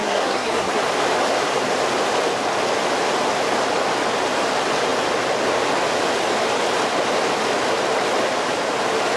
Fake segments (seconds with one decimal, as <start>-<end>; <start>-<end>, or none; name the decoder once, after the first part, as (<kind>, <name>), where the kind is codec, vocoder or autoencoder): 0.0-0.8 (codec, SNAC)